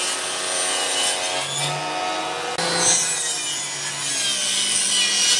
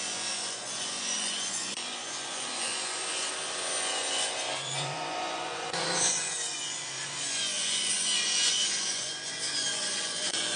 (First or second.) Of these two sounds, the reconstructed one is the second